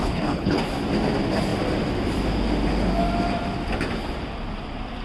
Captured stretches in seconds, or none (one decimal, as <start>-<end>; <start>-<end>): 0.6-5.0